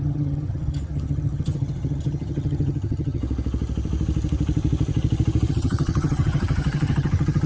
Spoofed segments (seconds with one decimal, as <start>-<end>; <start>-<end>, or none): 0.0-3.2; 5.5-7.5

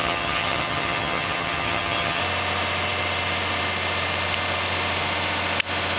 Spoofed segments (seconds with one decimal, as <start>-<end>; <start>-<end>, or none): 0.0-2.2

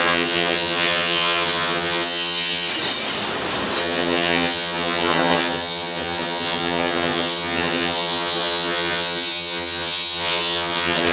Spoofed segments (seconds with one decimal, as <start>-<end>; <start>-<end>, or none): 0.0-2.7; 3.8-11.1